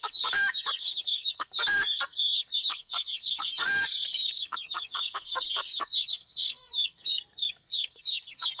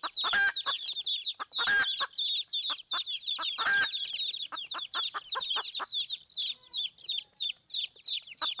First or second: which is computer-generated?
first